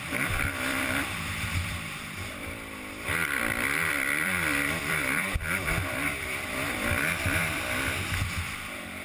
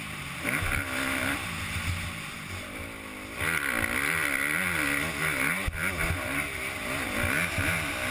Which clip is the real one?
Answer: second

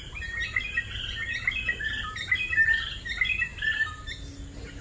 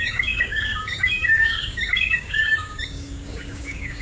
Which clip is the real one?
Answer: first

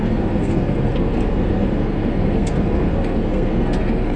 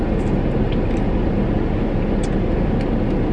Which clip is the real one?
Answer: second